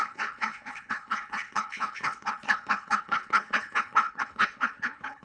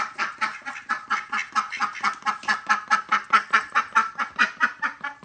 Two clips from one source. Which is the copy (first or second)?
first